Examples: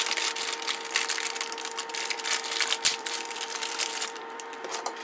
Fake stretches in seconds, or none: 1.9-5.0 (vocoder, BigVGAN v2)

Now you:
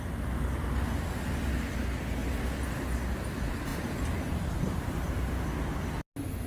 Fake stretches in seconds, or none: 3.7-5.8 (vocoder, BigVGAN v2)

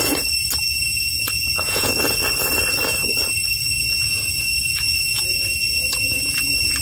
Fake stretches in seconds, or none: 0.7-1.9 (vocoder, Vocos); 3.7-6.8

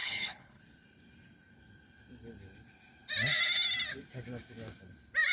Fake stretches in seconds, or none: 0.0-0.6 (codec, HILCodec)

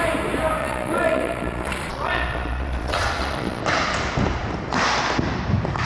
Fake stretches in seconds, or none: 0.6-3.6 (vocoder, Vocos)

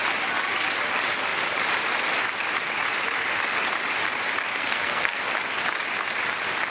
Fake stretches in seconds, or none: 4.5-5.2 (codec, SNAC)

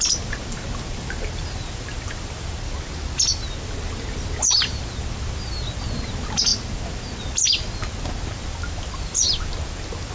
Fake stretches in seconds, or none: none